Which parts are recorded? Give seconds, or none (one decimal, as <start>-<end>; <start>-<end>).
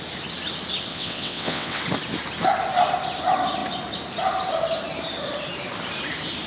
0.0-0.9; 1.8-6.5